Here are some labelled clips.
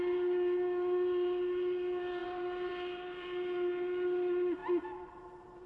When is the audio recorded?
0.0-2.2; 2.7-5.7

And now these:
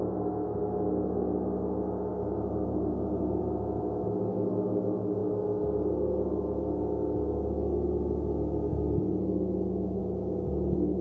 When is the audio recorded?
0.0-2.1; 3.4-11.0

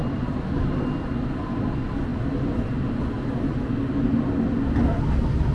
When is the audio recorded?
0.0-5.5

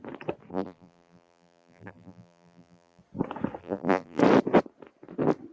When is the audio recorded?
0.0-0.5; 3.0-3.6; 4.2-5.5